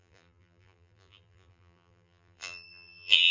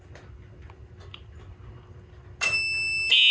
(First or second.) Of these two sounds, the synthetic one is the first